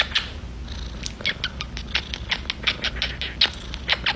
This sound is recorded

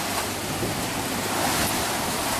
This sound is recorded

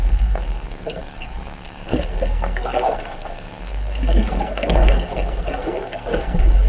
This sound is remade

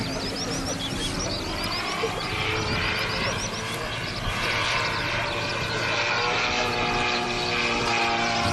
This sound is recorded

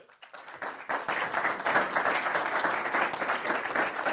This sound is recorded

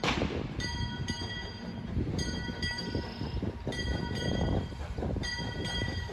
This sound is remade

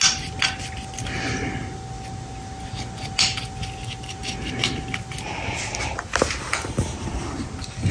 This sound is recorded